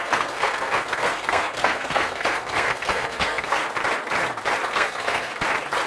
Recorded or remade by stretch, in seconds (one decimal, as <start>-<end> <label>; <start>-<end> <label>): 0.0-3.6 remade; 3.6-4.7 recorded; 4.7-5.3 remade; 5.3-5.9 recorded